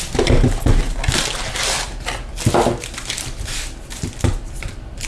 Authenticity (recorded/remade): recorded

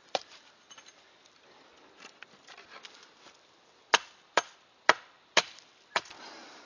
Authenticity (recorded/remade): remade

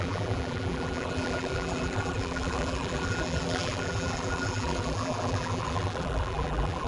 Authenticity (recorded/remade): remade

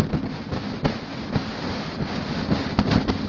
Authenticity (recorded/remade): recorded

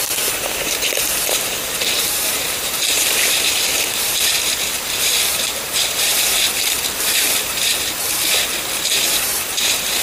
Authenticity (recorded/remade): remade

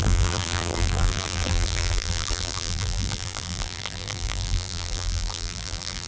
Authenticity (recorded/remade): remade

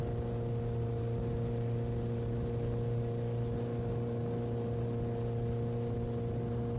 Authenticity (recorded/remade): recorded